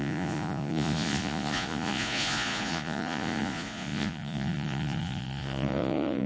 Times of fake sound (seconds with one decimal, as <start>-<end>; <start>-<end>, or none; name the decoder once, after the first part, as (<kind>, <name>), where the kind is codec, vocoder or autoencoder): 0.0-6.3 (vocoder, Vocos)